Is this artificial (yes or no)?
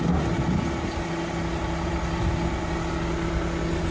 no